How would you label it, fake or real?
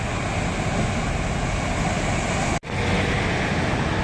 real